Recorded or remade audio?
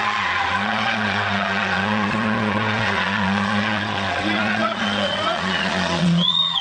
remade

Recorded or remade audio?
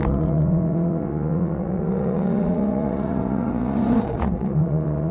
remade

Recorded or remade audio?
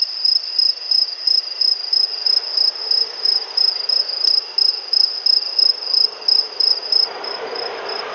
recorded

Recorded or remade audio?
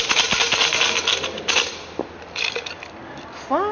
recorded